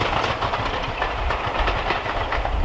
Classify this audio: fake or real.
real